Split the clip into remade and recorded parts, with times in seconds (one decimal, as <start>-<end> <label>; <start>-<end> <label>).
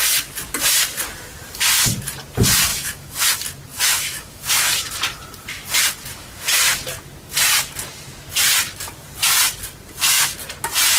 0.0-2.7 recorded; 2.7-3.3 remade; 3.3-3.7 recorded; 3.7-4.7 remade; 4.7-6.1 recorded; 6.1-6.6 remade; 6.6-11.0 recorded